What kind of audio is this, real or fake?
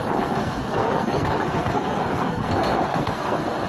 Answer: fake